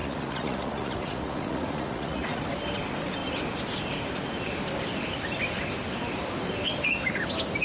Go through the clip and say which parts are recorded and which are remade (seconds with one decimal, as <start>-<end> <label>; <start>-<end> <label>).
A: 0.0-2.4 remade; 2.4-7.6 recorded